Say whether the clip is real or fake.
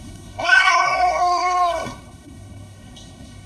fake